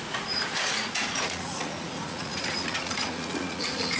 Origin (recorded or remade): remade